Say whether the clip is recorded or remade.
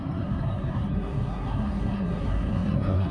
remade